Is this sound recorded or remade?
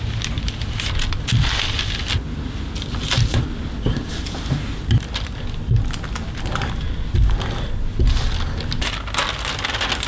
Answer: recorded